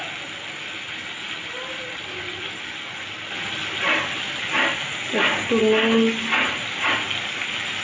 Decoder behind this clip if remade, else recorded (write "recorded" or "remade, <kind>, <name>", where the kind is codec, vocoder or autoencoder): recorded